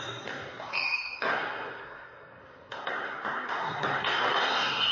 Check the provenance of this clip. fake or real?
fake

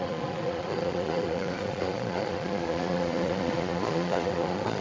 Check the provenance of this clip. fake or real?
fake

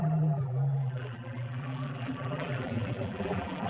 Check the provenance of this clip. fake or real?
fake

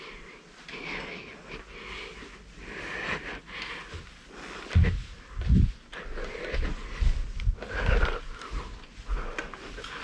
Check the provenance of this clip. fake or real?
real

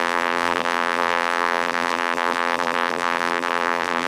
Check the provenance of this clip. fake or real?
fake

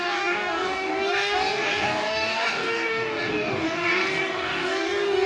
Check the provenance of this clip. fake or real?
fake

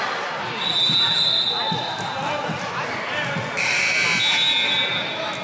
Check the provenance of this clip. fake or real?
real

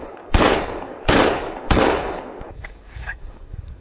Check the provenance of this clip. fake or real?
fake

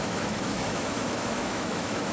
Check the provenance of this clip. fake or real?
fake